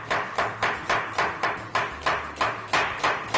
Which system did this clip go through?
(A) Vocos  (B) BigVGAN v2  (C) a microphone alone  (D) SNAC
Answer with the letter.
C